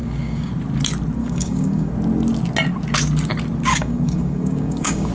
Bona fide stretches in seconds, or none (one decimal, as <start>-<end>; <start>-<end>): 0.5-1.2; 1.9-3.7